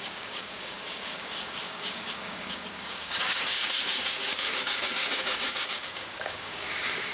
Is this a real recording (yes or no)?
no